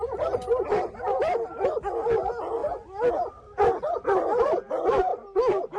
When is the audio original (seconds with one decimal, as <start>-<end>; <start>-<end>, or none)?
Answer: 0.0-5.8